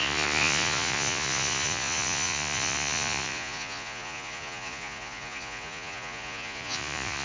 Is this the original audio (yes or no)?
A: no